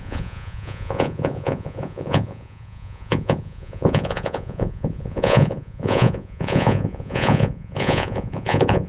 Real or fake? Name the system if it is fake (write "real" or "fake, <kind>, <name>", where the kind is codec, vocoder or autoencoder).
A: fake, vocoder, Vocos